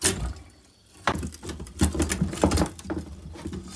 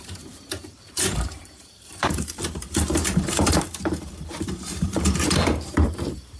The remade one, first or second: second